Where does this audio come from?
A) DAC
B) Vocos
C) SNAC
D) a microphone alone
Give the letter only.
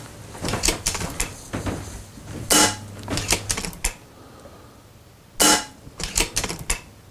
D